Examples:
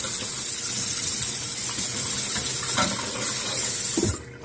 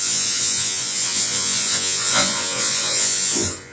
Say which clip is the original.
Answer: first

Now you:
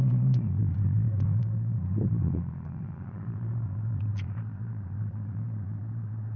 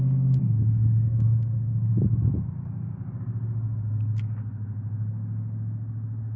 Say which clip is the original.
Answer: second